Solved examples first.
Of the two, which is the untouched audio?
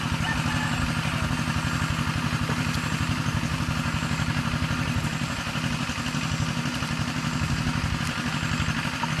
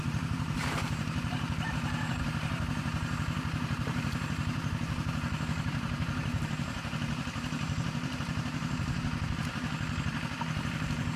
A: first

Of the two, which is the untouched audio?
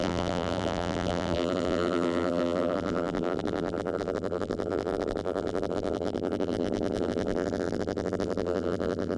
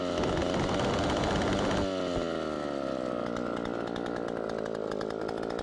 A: second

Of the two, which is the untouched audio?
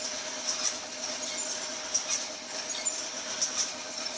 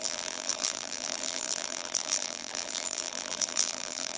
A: first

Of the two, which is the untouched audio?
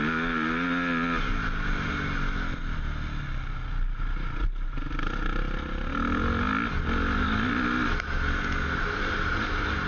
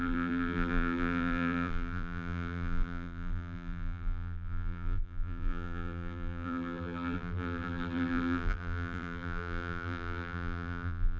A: first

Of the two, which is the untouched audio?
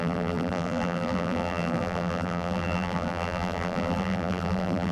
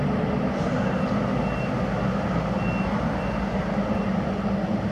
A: second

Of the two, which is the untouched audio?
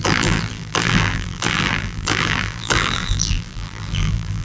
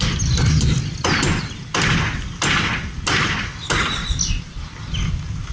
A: second